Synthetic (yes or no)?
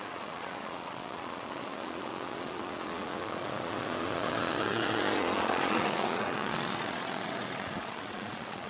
yes